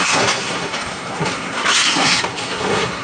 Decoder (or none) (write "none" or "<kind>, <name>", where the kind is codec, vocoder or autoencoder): codec, SNAC